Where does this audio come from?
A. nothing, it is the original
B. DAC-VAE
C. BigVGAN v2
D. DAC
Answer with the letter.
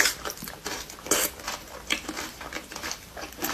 C